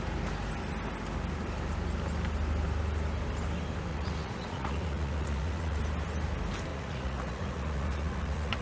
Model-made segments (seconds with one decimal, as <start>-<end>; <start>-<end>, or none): 3.9-5.8; 6.7-8.6